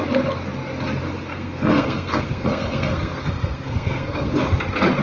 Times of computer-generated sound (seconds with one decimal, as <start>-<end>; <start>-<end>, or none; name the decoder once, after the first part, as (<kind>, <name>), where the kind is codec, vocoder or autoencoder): 1.3-4.3 (codec, SNAC)